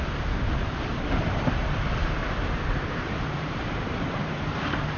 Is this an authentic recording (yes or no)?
no